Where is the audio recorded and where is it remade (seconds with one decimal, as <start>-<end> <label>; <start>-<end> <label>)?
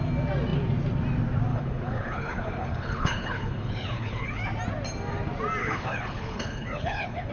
0.0-1.5 recorded; 1.5-4.4 remade; 4.4-5.6 recorded; 5.6-7.3 remade